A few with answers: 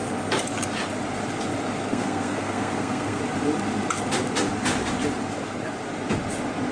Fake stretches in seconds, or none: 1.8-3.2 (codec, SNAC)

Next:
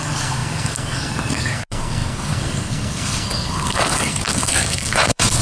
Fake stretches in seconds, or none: 0.0-5.4 (codec, SNAC)

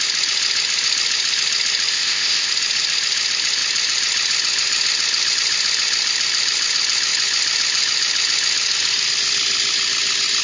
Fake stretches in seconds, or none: 1.9-2.5 (codec, ZipCodec)

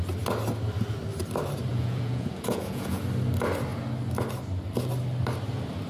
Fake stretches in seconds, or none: 1.7-3.0 (vocoder, Vocos)